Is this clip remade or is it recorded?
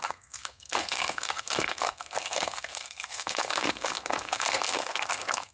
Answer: remade